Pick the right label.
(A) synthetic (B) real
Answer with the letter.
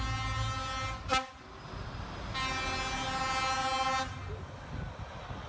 B